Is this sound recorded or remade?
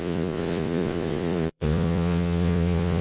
remade